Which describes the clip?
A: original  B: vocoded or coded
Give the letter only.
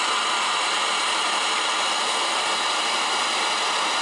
B